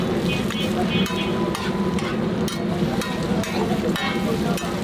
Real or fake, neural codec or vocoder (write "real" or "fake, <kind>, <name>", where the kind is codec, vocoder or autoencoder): real